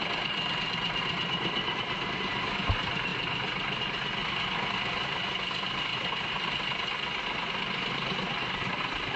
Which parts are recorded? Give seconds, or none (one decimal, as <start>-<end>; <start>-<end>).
0.0-9.2